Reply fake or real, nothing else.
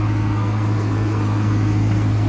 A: fake